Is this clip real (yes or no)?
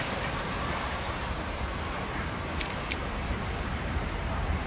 no